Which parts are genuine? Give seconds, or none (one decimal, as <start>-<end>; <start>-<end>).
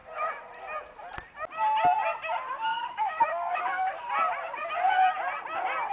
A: 0.0-2.7; 3.9-5.9